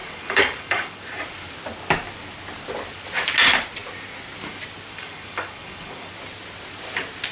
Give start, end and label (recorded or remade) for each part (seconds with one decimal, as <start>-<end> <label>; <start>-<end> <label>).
0.0-1.0 remade; 1.0-4.9 recorded; 4.9-6.1 remade; 6.1-7.3 recorded